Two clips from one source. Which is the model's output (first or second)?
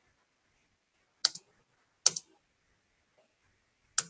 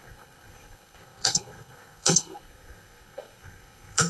second